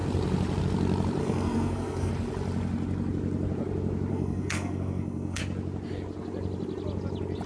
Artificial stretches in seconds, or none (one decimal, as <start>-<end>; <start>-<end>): 1.2-2.1; 4.1-5.4